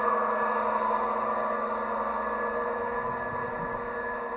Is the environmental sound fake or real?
real